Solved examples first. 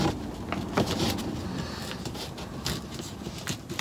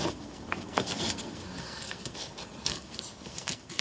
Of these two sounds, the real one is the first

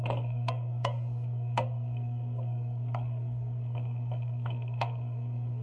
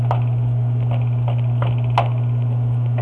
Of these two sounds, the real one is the second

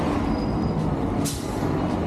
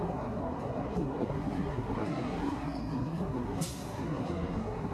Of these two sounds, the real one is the first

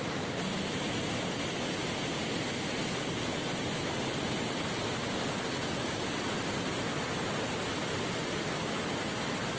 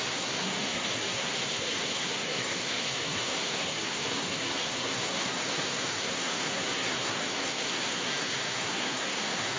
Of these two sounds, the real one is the first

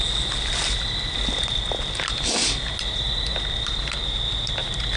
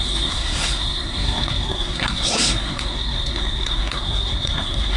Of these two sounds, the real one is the first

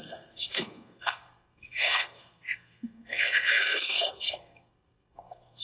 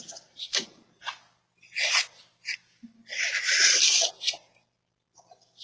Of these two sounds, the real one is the second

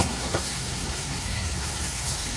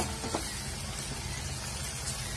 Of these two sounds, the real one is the second